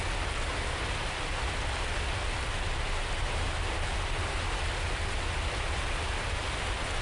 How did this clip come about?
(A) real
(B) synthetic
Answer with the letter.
A